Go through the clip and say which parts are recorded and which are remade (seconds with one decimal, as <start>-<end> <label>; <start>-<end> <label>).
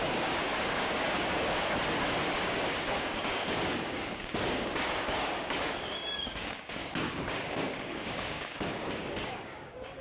0.0-1.3 remade; 1.3-3.0 recorded; 3.0-10.0 remade